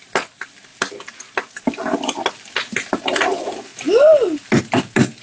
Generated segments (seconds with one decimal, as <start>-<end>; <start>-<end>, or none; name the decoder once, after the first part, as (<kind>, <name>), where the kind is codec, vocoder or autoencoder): none